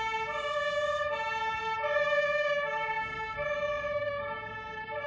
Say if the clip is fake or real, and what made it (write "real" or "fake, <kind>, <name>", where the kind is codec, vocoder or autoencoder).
fake, codec, DAC